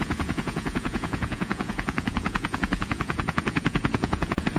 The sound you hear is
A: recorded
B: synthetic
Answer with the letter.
B